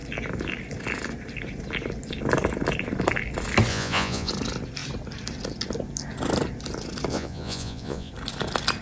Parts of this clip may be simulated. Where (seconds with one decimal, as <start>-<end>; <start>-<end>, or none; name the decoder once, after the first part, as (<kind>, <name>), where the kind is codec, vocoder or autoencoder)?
3.7-4.3 (vocoder, Vocos); 7.1-8.1